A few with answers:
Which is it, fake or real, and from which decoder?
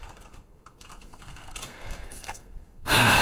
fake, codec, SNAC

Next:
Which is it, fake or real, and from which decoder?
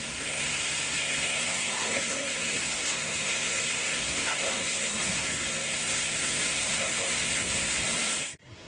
fake, codec, SNAC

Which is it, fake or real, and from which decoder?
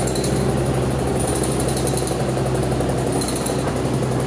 real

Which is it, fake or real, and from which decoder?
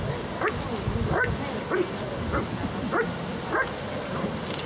real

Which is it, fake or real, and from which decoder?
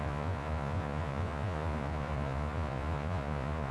fake, vocoder, Vocos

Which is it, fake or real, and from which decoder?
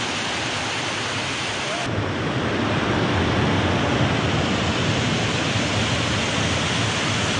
real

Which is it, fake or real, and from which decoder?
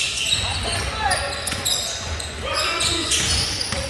fake, vocoder, Vocos